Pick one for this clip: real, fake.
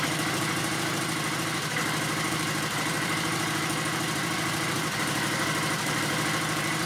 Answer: fake